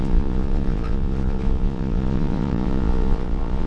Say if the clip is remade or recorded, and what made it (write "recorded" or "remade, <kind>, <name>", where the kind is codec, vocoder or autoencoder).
remade, vocoder, Vocos